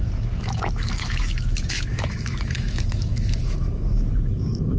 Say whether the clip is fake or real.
fake